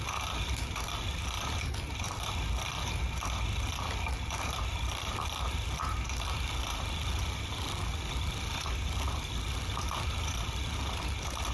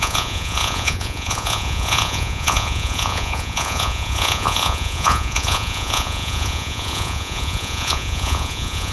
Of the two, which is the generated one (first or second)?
second